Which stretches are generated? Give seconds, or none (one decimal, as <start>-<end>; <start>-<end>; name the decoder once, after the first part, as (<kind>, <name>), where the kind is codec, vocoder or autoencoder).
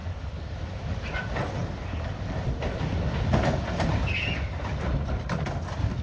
0.0-1.0 (vocoder, BigVGAN v2)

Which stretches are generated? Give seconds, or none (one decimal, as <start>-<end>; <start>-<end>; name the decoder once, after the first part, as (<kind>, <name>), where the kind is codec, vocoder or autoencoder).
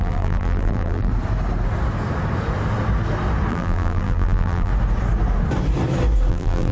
0.0-1.1 (vocoder, BigVGAN v2); 3.5-4.7; 6.3-6.7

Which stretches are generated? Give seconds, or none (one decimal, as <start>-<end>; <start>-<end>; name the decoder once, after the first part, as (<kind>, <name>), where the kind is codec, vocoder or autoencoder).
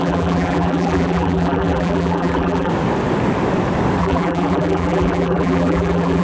0.0-2.7 (vocoder, BigVGAN v2); 4.0-6.2